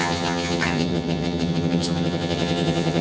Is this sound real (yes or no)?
no